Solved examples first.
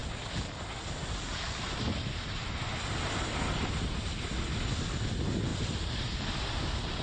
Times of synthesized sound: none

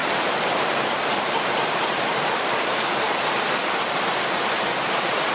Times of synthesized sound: 0.0-2.5 (vocoder, BigVGAN v2)

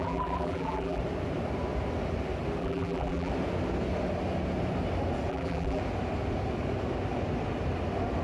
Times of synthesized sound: 0.0-1.0 (vocoder, BigVGAN v2); 2.6-3.3; 5.3-5.8